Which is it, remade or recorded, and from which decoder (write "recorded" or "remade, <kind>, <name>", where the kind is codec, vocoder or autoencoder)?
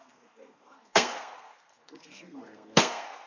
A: remade, codec, SNAC